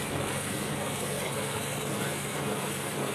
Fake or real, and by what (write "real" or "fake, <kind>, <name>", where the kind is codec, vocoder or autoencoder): fake, codec, SNAC